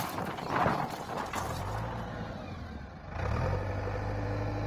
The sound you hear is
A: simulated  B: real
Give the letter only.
B